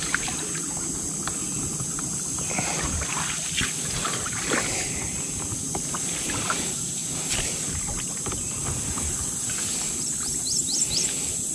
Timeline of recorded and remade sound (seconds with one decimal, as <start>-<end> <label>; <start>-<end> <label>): 0.0-11.5 recorded